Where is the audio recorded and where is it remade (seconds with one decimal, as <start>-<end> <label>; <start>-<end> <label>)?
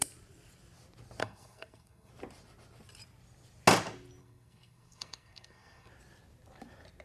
0.0-1.2 recorded; 1.2-2.1 remade; 2.1-4.2 recorded; 4.2-5.9 remade; 5.9-7.0 recorded